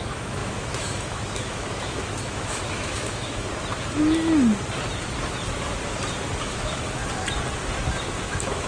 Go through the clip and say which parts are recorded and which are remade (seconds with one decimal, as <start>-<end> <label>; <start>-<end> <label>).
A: 0.0-3.5 remade; 3.5-6.4 recorded; 6.4-7.0 remade; 7.0-8.0 recorded; 8.0-8.7 remade